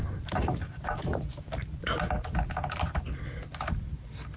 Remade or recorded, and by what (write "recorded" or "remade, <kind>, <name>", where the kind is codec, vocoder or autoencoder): recorded